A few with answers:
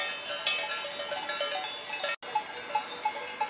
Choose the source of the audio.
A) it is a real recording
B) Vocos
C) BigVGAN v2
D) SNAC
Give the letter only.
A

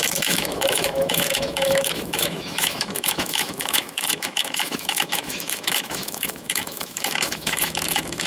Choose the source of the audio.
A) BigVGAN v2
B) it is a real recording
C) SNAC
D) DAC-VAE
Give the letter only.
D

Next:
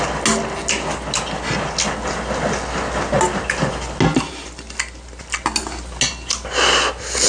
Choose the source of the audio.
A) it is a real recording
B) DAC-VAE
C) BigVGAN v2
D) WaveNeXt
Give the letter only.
A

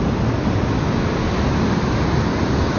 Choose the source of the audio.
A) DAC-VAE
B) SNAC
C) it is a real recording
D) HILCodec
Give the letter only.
C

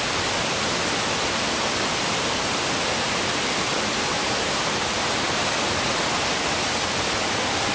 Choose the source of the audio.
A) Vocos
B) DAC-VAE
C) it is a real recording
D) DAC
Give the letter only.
C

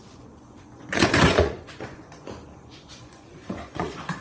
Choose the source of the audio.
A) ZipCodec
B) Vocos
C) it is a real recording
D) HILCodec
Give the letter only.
B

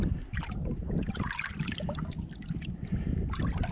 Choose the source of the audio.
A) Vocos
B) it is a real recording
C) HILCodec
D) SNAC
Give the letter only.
B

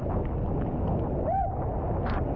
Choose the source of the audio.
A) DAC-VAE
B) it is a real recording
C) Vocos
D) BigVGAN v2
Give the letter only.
B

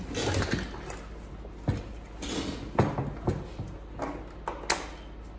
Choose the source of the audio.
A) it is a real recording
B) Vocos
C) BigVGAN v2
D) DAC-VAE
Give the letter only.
A